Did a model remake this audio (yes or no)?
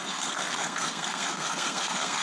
yes